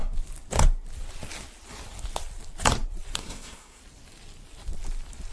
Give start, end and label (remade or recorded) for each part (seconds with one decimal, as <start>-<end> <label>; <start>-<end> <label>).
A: 0.0-3.2 recorded; 3.2-3.8 remade; 3.8-5.3 recorded